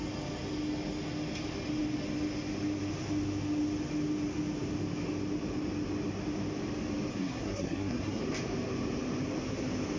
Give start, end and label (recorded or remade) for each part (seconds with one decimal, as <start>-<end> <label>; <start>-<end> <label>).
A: 0.0-7.1 recorded; 7.1-8.2 remade; 8.2-10.0 recorded